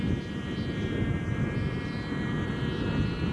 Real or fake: real